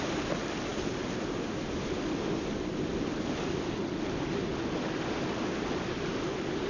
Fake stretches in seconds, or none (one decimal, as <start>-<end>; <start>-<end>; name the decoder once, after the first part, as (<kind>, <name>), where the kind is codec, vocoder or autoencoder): none